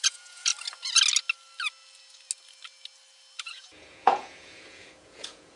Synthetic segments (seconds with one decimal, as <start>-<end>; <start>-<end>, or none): 0.0-0.5; 3.4-5.6